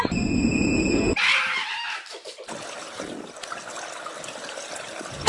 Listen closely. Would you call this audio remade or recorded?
recorded